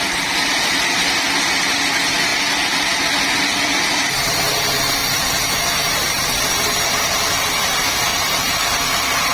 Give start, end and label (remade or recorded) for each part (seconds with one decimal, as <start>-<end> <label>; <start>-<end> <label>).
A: 0.0-8.1 recorded; 8.1-8.6 remade; 8.6-9.3 recorded